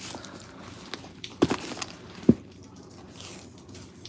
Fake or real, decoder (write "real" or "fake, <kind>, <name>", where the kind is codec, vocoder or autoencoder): real